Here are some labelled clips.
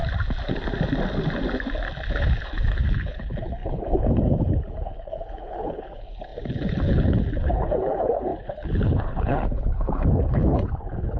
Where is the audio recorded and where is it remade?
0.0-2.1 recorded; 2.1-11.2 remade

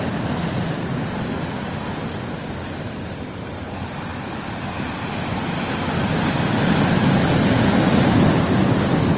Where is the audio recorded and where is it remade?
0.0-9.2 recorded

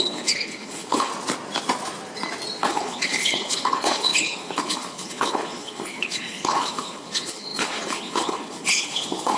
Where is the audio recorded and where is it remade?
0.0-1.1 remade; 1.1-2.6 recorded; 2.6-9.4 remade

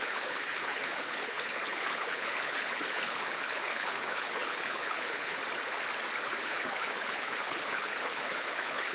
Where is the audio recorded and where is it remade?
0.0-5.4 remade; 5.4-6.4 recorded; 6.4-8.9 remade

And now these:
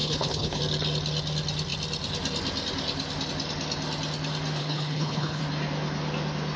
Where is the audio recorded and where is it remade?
0.0-0.6 remade; 0.6-4.6 recorded; 4.6-5.4 remade; 5.4-6.6 recorded